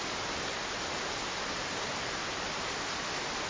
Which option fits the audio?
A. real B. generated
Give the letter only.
A